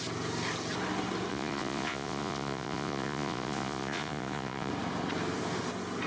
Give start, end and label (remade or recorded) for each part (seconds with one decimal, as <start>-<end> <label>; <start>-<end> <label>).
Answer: 0.0-1.3 recorded; 1.3-4.7 remade; 4.7-6.1 recorded